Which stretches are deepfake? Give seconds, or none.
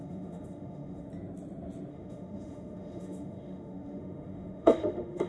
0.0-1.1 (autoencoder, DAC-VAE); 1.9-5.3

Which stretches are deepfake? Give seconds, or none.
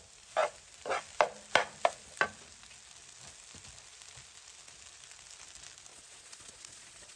5.9-7.2 (vocoder, Vocos)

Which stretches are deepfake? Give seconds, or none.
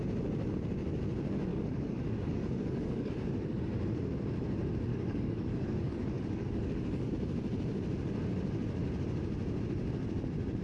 1.5-3.1 (codec, DAC); 4.9-7.1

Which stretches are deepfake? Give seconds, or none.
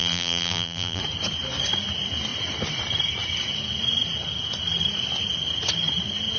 0.0-1.0 (vocoder, BigVGAN v2)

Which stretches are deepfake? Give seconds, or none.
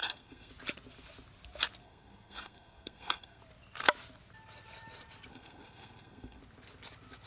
0.0-0.5 (codec, SNAC); 1.8-3.4; 5.3-6.4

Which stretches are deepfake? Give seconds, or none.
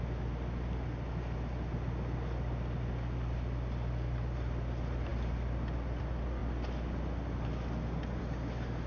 none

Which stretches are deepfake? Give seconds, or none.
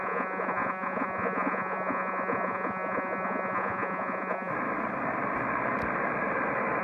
0.0-4.5 (vocoder, Vocos)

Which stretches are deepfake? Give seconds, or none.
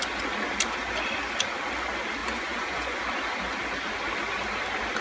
2.2-3.0 (vocoder, Vocos)